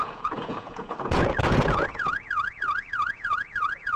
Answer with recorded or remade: remade